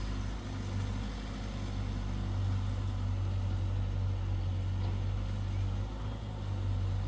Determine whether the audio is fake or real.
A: real